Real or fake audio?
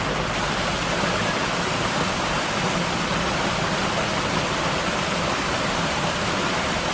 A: real